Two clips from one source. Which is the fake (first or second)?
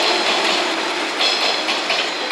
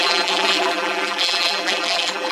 second